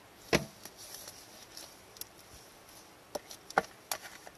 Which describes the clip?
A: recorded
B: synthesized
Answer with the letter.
A